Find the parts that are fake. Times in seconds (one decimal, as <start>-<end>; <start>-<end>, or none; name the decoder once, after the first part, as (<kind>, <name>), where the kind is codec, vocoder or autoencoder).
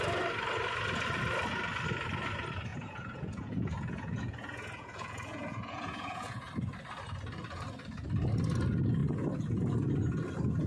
2.7-6.5 (vocoder, Vocos)